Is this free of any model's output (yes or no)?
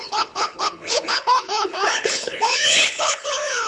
no